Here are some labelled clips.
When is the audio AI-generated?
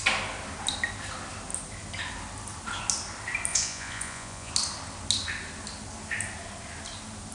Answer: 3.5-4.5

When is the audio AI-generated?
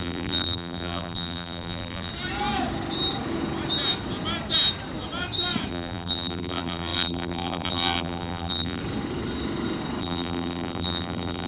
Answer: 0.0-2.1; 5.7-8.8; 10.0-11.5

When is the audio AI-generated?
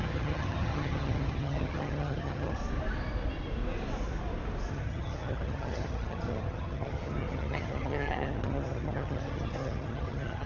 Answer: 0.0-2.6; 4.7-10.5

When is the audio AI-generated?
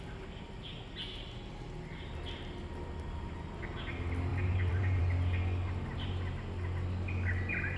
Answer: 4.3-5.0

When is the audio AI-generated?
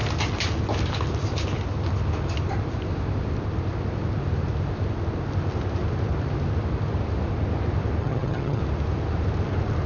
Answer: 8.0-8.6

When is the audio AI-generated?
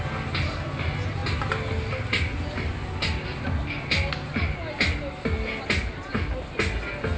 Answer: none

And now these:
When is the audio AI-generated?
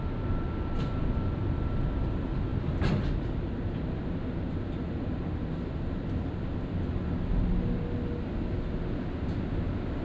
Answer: none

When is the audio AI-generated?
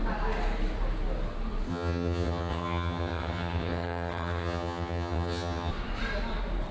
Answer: 1.7-5.7